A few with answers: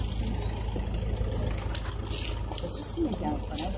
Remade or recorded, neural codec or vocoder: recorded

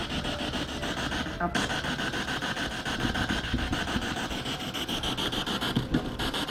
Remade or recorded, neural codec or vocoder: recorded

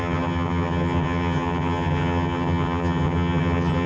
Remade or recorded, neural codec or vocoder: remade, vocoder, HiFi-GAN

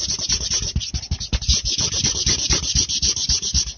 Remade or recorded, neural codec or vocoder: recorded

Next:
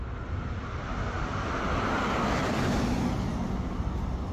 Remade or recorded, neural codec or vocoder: recorded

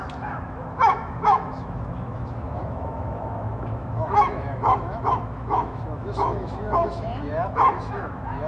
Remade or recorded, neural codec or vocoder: remade, autoencoder, DAC-VAE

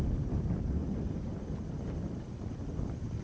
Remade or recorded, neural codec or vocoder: recorded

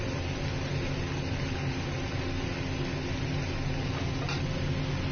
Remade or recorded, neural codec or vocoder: recorded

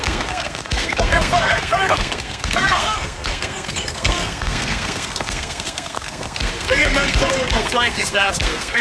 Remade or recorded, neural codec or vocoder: remade, codec, SNAC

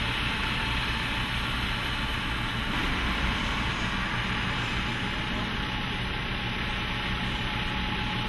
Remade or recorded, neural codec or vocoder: recorded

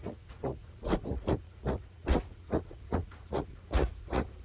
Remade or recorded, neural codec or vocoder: remade, vocoder, Vocos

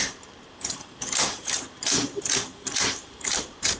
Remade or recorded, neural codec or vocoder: remade, vocoder, BigVGAN v2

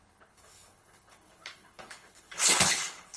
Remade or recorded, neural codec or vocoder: remade, codec, HILCodec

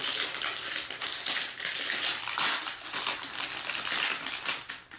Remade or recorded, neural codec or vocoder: recorded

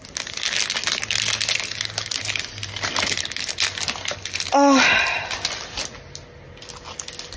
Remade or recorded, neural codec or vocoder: recorded